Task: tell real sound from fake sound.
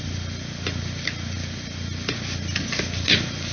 real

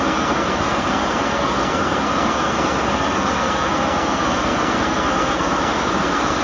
fake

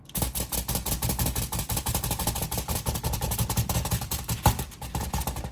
real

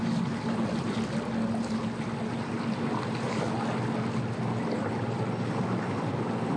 real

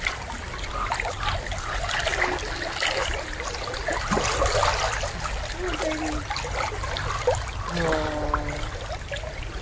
real